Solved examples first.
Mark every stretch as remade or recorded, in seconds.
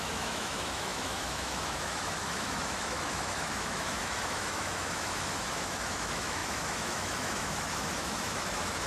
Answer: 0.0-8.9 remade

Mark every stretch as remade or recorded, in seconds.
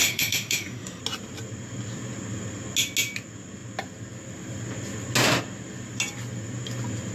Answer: 0.0-1.0 remade; 1.0-7.1 recorded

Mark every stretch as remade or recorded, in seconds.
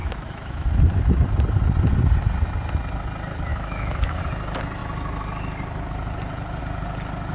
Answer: 0.0-0.7 remade; 0.7-3.5 recorded; 3.5-4.2 remade; 4.2-7.3 recorded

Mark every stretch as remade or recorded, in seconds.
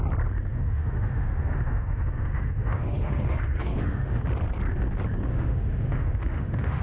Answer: 0.0-0.5 recorded; 0.5-4.2 remade; 4.2-5.3 recorded; 5.3-6.8 remade